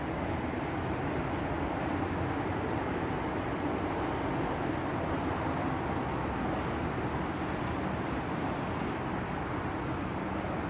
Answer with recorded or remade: recorded